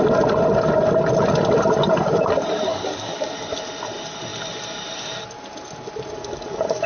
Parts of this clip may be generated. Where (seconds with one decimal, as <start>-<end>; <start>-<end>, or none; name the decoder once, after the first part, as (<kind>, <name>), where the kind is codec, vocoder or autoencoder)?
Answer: 2.7-3.3 (codec, DAC); 6.2-6.9

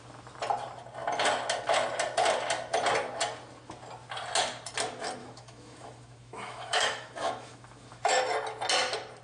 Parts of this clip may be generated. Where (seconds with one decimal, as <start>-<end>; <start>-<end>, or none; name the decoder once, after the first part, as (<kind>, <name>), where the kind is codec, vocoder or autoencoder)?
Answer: 5.2-8.2 (autoencoder, DAC-VAE)

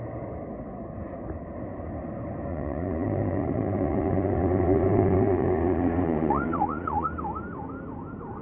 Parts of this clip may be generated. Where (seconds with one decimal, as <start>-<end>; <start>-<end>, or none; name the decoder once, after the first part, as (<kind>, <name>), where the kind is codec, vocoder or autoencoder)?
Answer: 2.5-7.1 (vocoder, Vocos)

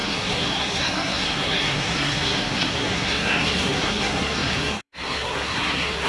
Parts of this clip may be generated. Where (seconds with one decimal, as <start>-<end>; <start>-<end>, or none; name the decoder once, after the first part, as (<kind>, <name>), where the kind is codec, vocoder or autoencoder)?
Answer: 0.0-6.1 (codec, SNAC)

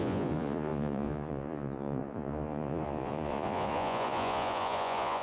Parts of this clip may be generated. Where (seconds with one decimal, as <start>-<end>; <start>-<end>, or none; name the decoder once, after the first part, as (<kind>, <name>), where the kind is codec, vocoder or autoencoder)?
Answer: 0.0-5.2 (vocoder, Vocos)

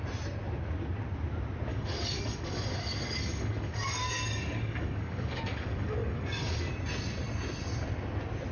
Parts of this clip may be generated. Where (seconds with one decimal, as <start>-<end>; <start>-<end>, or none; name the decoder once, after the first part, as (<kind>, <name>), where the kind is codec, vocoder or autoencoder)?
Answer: 1.7-6.7 (codec, DAC)